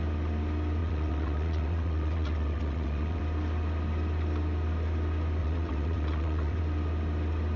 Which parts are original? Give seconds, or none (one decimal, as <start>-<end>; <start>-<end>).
0.0-0.8; 3.2-5.4; 6.6-7.6